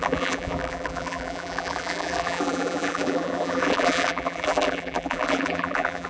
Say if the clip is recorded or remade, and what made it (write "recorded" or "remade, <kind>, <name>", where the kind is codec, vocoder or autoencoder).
remade, vocoder, BigVGAN v2